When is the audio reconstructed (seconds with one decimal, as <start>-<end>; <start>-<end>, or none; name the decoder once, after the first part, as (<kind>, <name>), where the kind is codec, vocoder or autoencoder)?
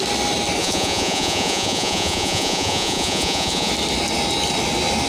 0.6-3.7 (vocoder, Vocos)